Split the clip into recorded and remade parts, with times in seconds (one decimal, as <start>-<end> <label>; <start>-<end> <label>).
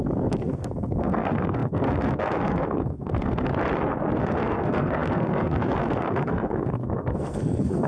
0.0-3.5 remade; 3.5-4.2 recorded; 4.2-7.9 remade